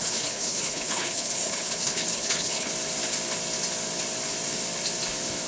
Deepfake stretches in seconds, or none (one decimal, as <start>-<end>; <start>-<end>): 0.0-2.7

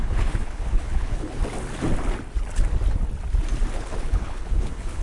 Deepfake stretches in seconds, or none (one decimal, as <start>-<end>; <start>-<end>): 0.0-1.4; 3.7-5.0

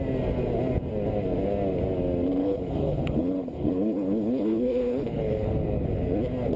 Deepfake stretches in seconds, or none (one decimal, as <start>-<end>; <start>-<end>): 2.4-5.5